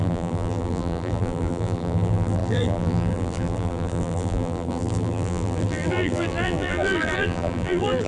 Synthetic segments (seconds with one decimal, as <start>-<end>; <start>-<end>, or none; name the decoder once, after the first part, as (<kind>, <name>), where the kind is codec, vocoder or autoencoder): 0.0-8.1 (vocoder, BigVGAN v2)